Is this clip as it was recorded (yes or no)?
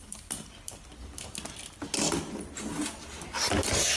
yes